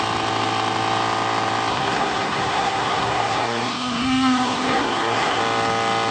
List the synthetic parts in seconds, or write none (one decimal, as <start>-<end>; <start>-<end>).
1.7-5.4